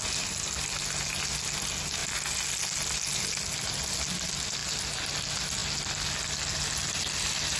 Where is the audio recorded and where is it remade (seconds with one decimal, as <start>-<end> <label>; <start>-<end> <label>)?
0.0-7.6 recorded